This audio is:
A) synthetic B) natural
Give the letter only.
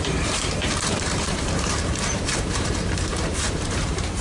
A